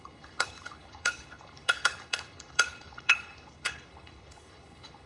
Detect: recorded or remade remade